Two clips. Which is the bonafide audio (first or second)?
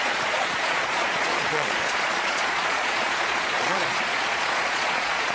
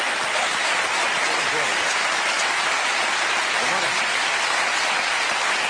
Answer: second